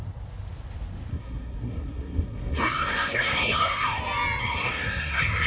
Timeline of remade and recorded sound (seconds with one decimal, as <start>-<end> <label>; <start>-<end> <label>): 0.0-1.1 recorded; 1.1-4.0 remade; 4.0-4.4 recorded; 4.4-5.5 remade